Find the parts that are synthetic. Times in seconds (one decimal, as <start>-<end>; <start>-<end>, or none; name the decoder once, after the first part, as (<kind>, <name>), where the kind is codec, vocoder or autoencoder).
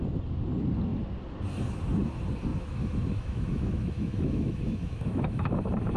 2.5-5.6 (autoencoder, DAC-VAE)